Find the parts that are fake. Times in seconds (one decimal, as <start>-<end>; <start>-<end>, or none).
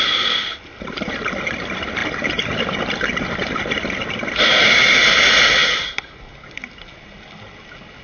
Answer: none